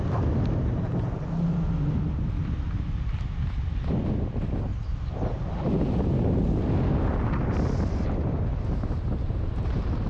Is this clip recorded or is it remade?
recorded